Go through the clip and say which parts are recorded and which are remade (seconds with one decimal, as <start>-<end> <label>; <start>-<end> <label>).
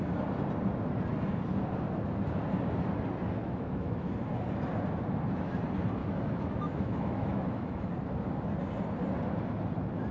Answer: 0.0-3.4 recorded; 3.4-4.1 remade; 4.1-6.0 recorded; 6.0-7.9 remade; 7.9-10.1 recorded